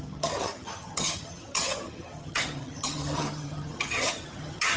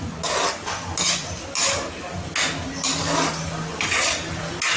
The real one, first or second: second